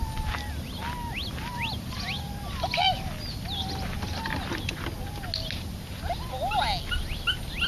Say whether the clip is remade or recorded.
recorded